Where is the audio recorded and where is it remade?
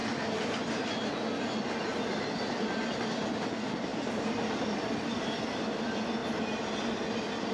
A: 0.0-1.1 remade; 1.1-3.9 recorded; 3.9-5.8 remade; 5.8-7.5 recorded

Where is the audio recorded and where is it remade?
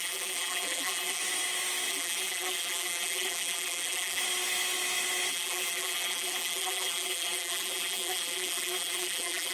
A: 0.0-1.2 remade; 1.2-1.9 recorded; 1.9-4.2 remade; 4.2-5.3 recorded; 5.3-9.5 remade